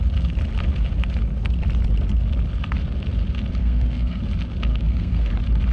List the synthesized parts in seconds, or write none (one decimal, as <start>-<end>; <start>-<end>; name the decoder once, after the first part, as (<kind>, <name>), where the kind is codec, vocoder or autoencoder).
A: 3.6-4.2 (codec, SNAC); 4.7-5.3